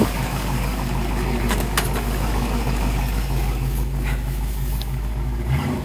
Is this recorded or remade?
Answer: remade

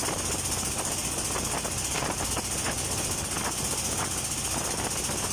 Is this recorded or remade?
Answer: recorded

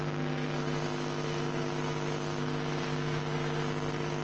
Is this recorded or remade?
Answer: remade